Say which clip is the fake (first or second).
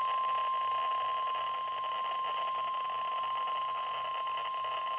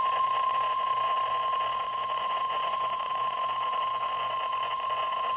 second